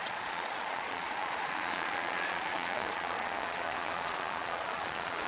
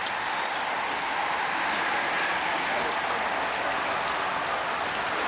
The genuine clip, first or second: second